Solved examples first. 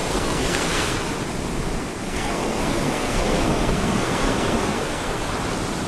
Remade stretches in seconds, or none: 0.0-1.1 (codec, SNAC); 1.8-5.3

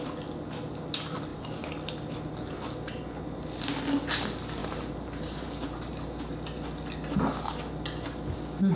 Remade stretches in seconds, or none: 4.6-5.9 (vocoder, BigVGAN v2)

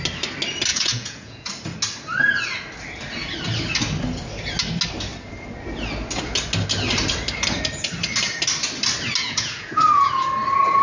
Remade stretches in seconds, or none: 0.7-1.5 (vocoder, Vocos); 9.2-10.1

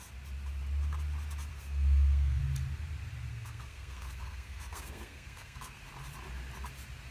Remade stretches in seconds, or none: 1.5-2.4 (codec, SNAC); 3.3-5.8

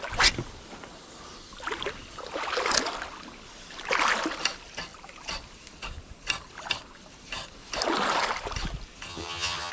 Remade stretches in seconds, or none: 9.1-9.7 (vocoder, HiFi-GAN)

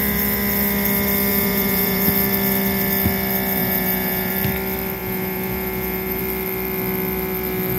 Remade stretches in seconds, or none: 1.3-2.1 (vocoder, Vocos); 3.6-4.3; 5.0-6.2

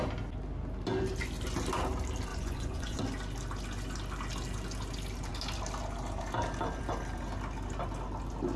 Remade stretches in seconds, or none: 2.3-3.0 (vocoder, Vocos)